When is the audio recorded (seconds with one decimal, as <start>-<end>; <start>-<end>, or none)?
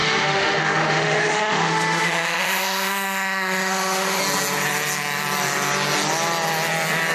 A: 4.2-7.1